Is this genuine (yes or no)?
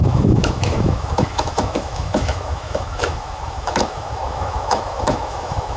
no